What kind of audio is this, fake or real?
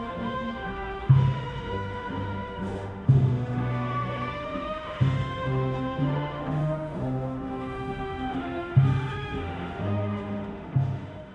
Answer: fake